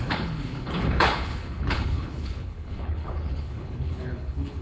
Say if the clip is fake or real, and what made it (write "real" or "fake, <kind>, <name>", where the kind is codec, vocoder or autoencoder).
fake, codec, HILCodec